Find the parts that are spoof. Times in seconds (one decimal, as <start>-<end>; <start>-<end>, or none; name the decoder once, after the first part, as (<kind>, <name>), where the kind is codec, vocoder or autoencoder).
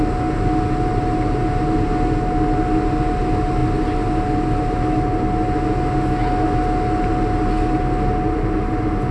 none